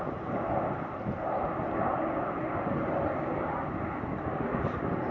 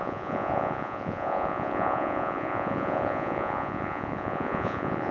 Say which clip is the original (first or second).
first